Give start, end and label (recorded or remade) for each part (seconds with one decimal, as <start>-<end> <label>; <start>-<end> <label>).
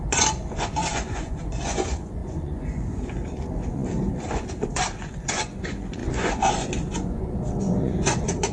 0.0-8.5 remade